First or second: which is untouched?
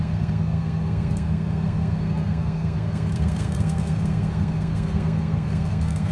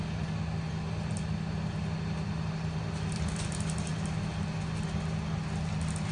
second